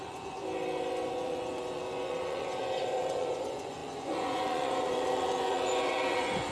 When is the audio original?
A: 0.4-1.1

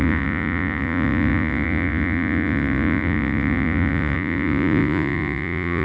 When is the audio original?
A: none